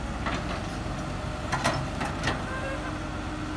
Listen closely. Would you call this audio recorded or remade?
recorded